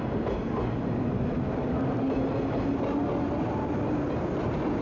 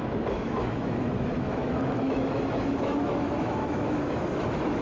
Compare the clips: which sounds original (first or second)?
first